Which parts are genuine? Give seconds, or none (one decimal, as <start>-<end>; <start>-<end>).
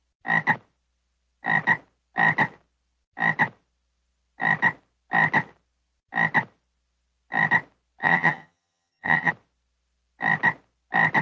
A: 0.0-8.0; 9.3-11.2